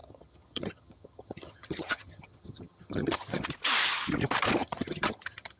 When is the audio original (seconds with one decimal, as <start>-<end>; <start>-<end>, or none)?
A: 3.4-4.6